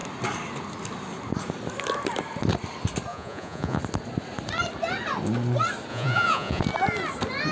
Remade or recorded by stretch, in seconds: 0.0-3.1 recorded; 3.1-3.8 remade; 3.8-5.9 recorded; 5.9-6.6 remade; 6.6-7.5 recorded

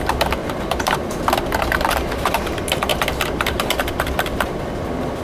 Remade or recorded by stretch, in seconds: 0.0-0.4 recorded; 0.4-1.2 remade; 1.2-2.9 recorded; 2.9-4.6 remade; 4.6-5.2 recorded

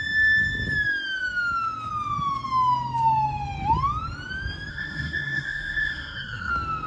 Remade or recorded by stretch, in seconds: 0.0-4.7 recorded; 4.7-6.5 remade; 6.5-6.9 recorded

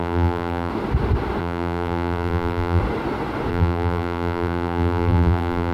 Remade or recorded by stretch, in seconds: 0.0-0.7 remade; 0.7-1.4 recorded; 1.4-2.8 remade; 2.8-3.5 recorded; 3.5-5.7 remade